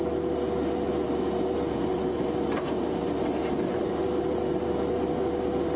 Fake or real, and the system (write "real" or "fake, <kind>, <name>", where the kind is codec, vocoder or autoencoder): real